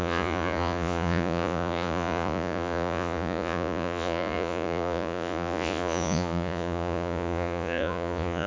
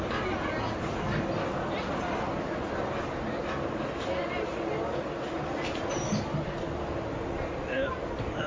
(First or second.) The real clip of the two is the second